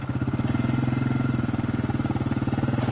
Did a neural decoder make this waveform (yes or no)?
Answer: no